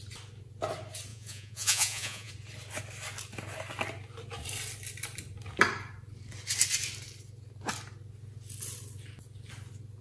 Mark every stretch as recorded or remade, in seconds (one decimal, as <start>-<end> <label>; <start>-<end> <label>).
0.0-1.1 recorded; 1.1-2.3 remade; 2.3-10.0 recorded